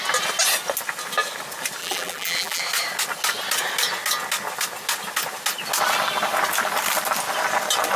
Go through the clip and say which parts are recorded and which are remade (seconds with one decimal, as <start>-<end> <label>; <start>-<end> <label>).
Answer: 0.0-1.8 recorded; 1.8-2.6 remade; 2.6-8.0 recorded